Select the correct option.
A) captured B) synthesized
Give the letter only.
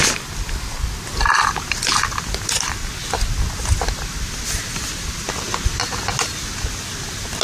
A